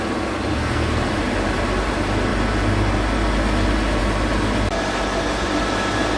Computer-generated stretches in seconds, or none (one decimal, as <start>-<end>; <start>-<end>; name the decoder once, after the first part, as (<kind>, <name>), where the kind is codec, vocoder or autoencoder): 0.5-1.1 (codec, SNAC)